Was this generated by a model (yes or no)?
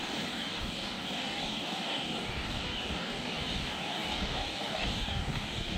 yes